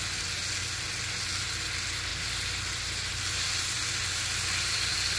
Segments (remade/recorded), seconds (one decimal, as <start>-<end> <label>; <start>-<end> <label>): 0.0-5.2 recorded